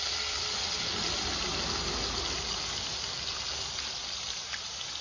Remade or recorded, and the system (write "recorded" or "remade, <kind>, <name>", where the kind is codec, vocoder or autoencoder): recorded